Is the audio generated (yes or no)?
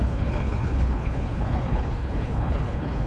yes